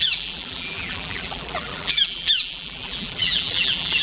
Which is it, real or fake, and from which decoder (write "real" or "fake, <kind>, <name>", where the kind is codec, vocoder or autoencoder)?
fake, vocoder, BigVGAN v2